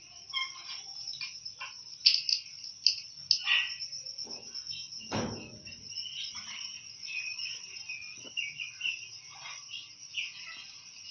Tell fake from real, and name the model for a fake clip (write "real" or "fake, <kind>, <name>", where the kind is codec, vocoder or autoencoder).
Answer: real